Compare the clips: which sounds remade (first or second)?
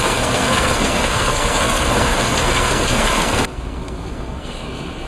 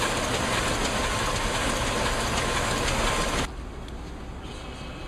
first